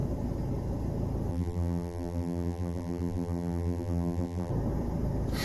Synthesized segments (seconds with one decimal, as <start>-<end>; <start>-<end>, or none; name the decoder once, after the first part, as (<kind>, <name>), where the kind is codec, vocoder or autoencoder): 1.3-4.5 (vocoder, BigVGAN v2)